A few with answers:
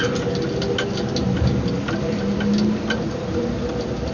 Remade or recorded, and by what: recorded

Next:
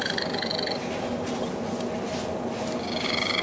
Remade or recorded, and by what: recorded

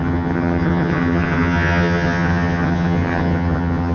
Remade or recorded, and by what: remade, vocoder, HiFi-GAN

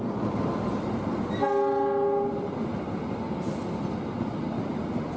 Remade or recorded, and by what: recorded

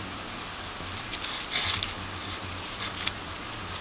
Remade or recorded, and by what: recorded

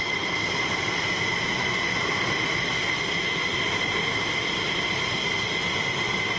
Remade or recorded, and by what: recorded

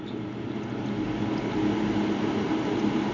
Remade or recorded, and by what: recorded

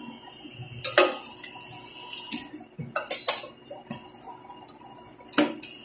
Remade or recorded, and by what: recorded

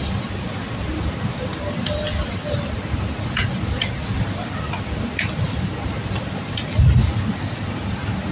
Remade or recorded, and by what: recorded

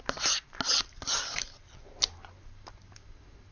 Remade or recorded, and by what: recorded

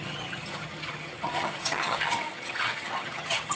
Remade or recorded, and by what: remade, vocoder, HiFi-GAN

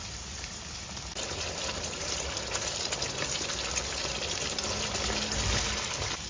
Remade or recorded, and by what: recorded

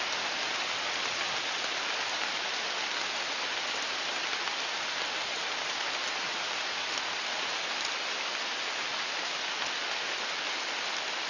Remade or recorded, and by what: recorded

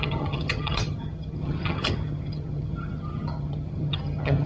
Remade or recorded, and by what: remade, vocoder, HiFi-GAN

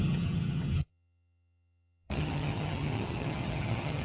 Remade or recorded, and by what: remade, vocoder, HiFi-GAN